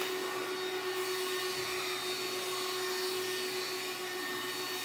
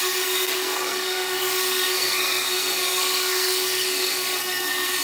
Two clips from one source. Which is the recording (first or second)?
first